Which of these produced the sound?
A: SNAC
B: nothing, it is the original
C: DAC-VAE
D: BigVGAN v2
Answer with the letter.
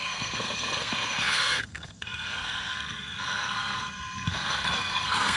A